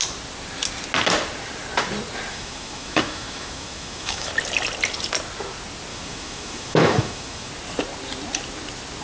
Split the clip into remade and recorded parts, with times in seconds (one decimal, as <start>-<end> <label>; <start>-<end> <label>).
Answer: 0.0-2.3 recorded; 2.3-4.3 remade; 4.3-5.9 recorded; 5.9-7.5 remade; 7.5-9.0 recorded